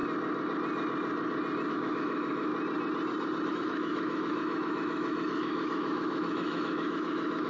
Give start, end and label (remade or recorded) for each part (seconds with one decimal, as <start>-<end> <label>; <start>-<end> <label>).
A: 0.0-1.7 recorded; 1.7-2.5 remade; 2.5-3.5 recorded; 3.5-7.5 remade